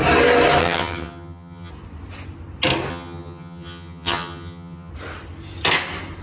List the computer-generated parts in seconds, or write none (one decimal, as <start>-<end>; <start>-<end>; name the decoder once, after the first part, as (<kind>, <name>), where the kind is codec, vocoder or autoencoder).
0.6-1.7 (vocoder, HiFi-GAN); 2.9-4.9